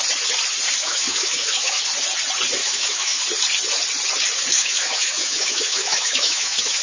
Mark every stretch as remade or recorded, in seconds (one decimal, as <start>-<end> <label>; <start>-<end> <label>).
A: 0.0-0.8 recorded; 0.8-1.8 remade; 1.8-2.6 recorded; 2.6-3.2 remade; 3.2-4.5 recorded; 4.5-6.8 remade